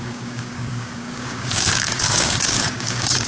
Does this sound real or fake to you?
fake